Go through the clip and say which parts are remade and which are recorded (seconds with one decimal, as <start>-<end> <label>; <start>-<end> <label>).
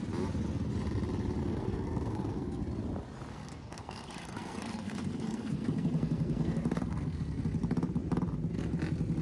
0.0-1.4 recorded; 1.4-2.6 remade; 2.6-3.3 recorded; 3.3-7.4 remade; 7.4-9.2 recorded